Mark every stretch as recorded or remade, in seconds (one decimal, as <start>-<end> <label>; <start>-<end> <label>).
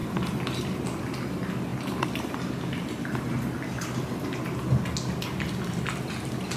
0.0-6.6 recorded